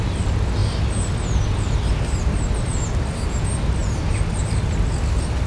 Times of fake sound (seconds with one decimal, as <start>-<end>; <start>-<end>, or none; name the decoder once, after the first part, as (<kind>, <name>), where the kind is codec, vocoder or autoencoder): 2.7-3.3 (vocoder, BigVGAN v2); 3.8-4.7